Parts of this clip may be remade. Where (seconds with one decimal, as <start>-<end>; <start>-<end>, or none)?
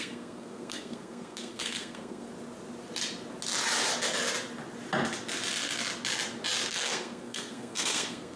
0.0-2.3; 6.7-8.4